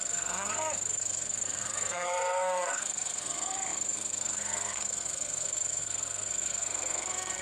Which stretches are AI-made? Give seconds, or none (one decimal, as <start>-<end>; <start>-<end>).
0.0-7.4